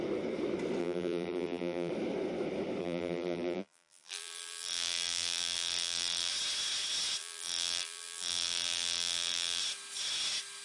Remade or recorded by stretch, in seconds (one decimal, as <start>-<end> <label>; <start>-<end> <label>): 0.0-0.8 recorded; 0.8-1.9 remade; 1.9-2.8 recorded; 2.8-6.3 remade; 6.3-7.2 recorded; 7.2-9.6 remade; 9.6-10.6 recorded